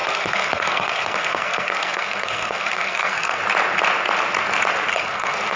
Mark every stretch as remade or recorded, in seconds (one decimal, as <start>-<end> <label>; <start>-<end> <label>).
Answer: 0.0-3.4 remade; 3.4-4.9 recorded; 4.9-5.6 remade